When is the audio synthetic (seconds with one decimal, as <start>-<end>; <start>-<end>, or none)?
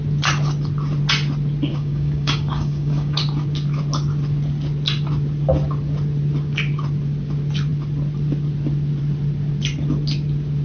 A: 1.7-3.2